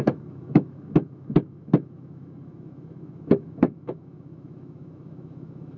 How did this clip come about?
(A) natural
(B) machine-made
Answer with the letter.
B